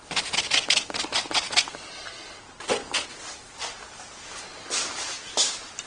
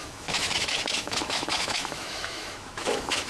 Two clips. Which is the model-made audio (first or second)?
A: second